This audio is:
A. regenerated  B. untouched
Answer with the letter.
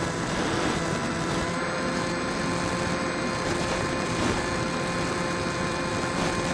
A